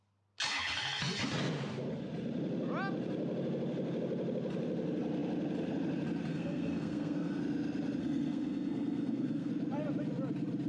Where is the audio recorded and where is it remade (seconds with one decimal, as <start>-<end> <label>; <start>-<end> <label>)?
0.0-6.3 recorded; 6.3-7.4 remade; 7.4-8.0 recorded; 8.0-9.5 remade; 9.5-10.7 recorded